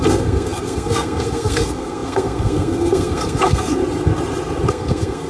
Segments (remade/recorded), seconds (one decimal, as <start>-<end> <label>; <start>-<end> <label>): 0.0-3.8 remade; 3.8-4.7 recorded; 4.7-5.3 remade

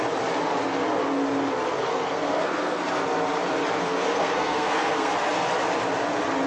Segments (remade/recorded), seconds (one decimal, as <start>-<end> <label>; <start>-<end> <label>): 0.0-1.9 recorded; 1.9-2.9 remade; 2.9-3.8 recorded; 3.8-5.1 remade; 5.1-6.5 recorded

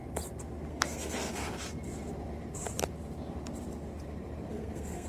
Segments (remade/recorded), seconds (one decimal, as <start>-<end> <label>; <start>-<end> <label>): 0.0-0.7 recorded; 0.7-1.4 remade; 1.4-4.5 recorded; 4.5-5.1 remade

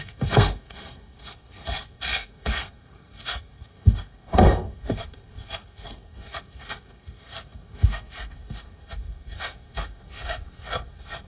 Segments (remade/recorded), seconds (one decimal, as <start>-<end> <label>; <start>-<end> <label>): 0.0-11.3 remade

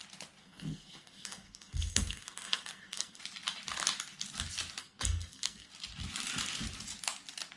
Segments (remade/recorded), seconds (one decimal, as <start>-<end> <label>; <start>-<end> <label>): 0.0-0.4 recorded; 0.4-3.2 remade; 3.2-4.8 recorded; 4.8-5.7 remade; 5.7-7.6 recorded

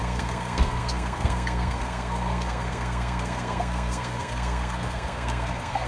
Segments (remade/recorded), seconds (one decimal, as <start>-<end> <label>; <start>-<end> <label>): 0.0-5.9 remade

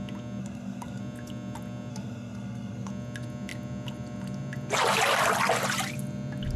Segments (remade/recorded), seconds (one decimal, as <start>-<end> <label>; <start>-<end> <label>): 0.0-0.4 recorded; 0.4-1.0 remade; 1.0-1.9 recorded; 1.9-2.9 remade; 2.9-6.6 recorded

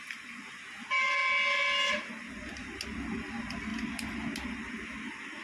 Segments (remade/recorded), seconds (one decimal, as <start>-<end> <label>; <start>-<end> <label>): 0.0-5.4 recorded